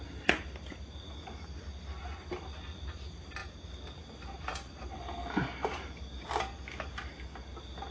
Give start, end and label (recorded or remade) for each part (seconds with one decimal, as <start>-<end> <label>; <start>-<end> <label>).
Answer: 0.0-7.9 recorded